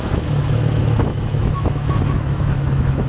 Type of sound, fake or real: fake